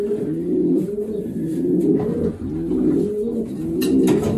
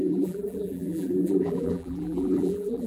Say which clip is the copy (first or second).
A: second